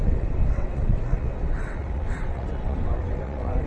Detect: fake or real fake